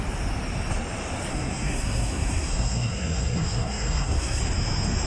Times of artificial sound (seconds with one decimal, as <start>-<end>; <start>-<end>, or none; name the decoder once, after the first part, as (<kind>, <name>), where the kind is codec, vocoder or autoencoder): 1.3-4.4 (codec, SNAC)